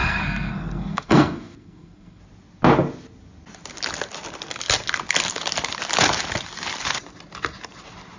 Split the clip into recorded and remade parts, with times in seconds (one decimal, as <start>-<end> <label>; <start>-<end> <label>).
0.0-2.2 remade; 2.2-8.2 recorded